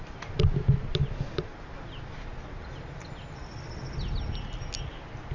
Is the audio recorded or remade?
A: recorded